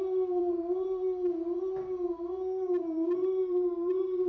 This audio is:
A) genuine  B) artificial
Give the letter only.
B